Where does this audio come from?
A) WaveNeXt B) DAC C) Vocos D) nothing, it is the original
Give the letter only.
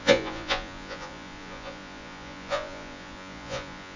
C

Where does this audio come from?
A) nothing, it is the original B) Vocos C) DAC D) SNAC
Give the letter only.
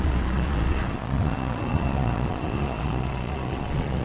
B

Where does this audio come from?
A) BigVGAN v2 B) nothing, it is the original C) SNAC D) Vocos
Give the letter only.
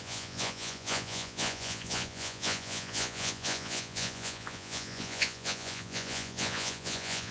D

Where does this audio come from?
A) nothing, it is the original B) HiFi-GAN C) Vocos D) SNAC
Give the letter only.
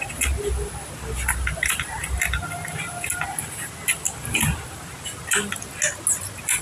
A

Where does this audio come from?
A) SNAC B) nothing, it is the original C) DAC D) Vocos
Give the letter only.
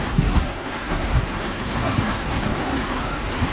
A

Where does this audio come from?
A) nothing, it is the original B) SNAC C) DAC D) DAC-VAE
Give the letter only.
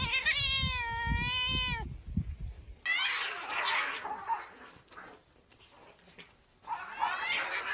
A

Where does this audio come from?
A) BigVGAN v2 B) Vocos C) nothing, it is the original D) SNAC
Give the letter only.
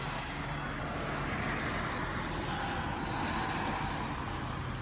C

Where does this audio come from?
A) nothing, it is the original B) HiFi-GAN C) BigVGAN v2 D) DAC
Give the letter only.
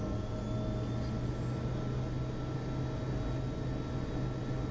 A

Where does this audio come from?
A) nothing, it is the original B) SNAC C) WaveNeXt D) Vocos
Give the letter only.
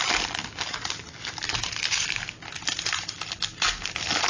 A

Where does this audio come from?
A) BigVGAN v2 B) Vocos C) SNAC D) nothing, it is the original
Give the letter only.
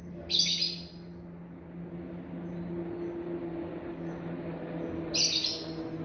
D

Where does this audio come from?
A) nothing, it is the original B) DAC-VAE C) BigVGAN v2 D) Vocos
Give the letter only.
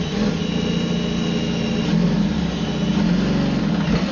A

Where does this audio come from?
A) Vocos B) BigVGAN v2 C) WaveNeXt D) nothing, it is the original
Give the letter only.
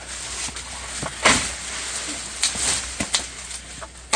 D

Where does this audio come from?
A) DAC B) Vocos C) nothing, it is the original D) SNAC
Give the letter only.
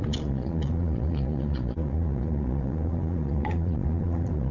B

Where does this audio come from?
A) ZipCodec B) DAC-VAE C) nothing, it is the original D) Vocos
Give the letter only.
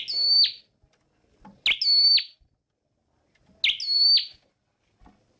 C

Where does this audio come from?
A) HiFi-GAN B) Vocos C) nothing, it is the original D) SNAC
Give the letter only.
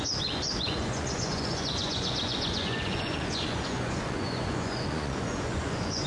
B